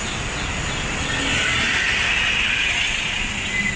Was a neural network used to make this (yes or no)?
no